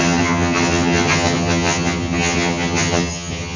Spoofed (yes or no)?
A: yes